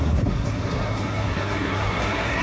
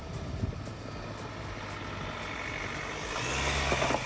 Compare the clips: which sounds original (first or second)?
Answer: second